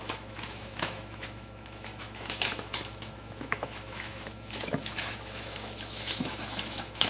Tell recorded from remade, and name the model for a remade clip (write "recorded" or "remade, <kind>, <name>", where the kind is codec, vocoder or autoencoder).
remade, autoencoder, DAC-VAE